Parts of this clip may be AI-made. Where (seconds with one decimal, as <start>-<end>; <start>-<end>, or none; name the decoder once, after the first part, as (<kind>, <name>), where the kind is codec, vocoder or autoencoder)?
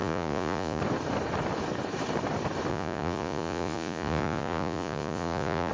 0.0-0.8 (vocoder, Vocos); 2.7-5.7